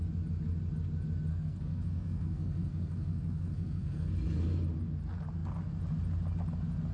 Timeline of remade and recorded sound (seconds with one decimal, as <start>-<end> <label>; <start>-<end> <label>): 0.0-1.3 recorded; 1.3-4.1 remade; 4.1-6.9 recorded